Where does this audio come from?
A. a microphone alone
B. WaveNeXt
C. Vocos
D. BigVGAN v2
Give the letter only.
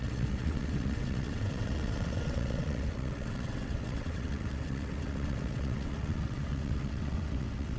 B